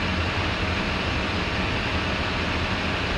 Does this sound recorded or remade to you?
recorded